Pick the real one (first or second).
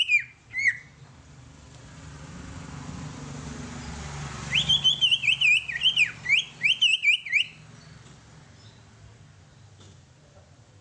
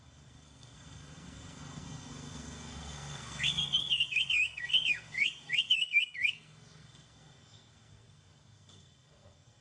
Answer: first